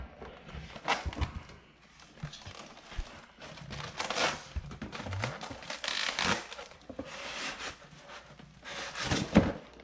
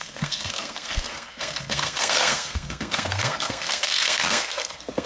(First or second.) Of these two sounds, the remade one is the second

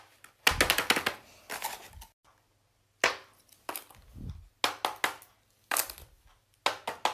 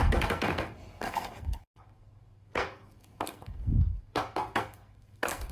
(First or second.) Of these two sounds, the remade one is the second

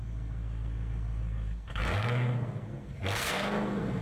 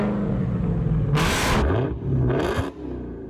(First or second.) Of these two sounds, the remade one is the first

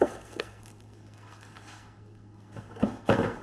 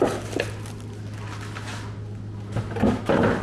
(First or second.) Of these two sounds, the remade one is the first